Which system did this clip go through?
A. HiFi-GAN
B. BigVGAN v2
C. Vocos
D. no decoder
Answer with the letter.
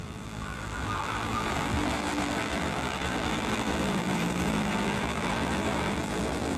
B